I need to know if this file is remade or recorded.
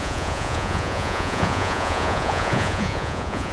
remade